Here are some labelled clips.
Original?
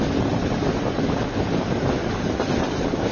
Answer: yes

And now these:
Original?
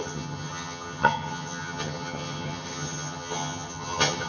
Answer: no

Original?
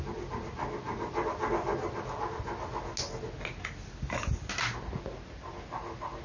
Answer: yes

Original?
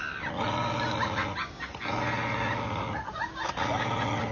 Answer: yes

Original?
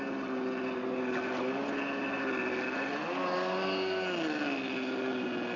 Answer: yes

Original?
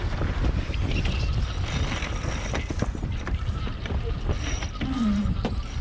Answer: yes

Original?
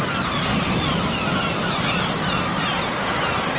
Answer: yes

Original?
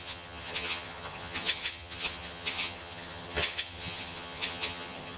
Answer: no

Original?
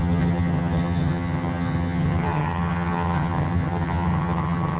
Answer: no